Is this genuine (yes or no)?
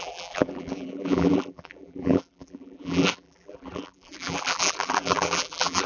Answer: no